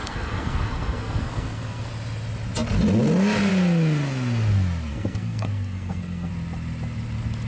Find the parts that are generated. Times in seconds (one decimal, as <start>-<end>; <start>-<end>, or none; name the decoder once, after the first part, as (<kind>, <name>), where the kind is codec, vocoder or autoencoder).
0.0-1.9 (codec, SNAC); 4.9-6.3